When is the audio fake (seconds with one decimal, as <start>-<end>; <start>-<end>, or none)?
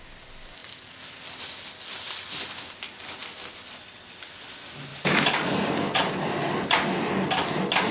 4.9-6.0